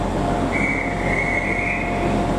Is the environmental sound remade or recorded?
recorded